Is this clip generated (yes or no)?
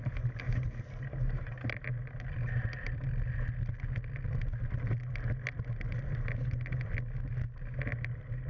no